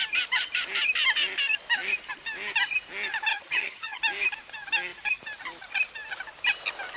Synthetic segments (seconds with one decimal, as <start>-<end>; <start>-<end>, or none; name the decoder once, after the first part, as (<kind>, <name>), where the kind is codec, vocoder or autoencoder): 3.3-4.0 (vocoder, HiFi-GAN)

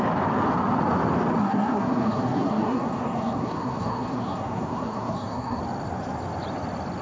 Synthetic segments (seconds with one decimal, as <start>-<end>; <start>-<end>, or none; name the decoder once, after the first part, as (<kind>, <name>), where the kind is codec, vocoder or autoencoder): 1.4-5.6 (codec, SNAC)